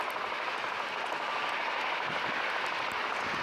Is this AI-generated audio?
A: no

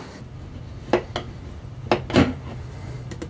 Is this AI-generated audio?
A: no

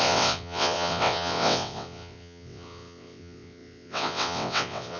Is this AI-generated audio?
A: yes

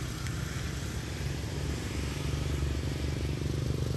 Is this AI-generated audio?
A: no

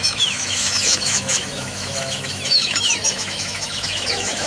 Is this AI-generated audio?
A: yes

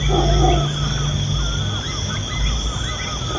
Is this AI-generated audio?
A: no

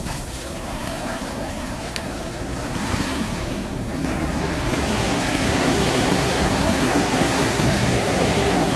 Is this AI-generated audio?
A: yes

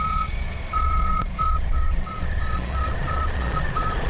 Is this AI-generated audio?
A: yes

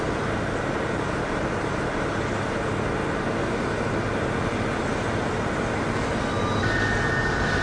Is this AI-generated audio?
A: no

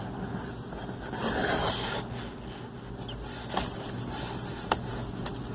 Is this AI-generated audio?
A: no